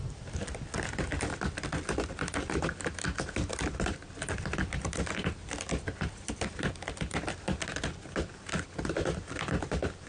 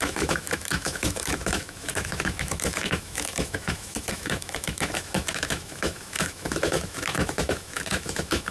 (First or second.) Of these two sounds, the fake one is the second